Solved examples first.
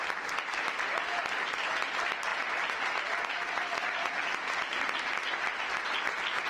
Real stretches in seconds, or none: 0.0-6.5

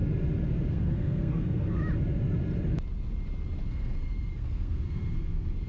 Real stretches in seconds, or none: 0.0-0.7; 1.8-3.7

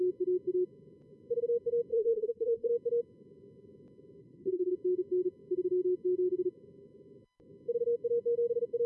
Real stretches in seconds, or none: 0.0-1.9; 2.7-4.2; 4.7-8.9

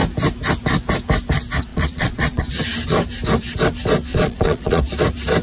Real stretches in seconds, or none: 0.0-1.7; 2.5-4.1; 4.8-5.4

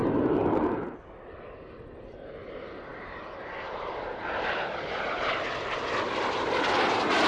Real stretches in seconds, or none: 0.0-7.3

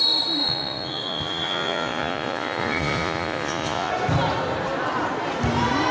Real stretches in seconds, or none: 0.0-0.4; 3.9-5.9

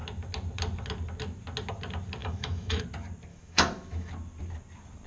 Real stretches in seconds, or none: 0.0-2.2; 2.8-3.3; 4.1-5.1